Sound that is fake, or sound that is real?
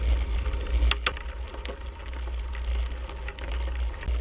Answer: real